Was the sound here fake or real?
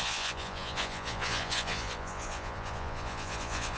fake